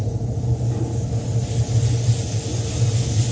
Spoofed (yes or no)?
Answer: no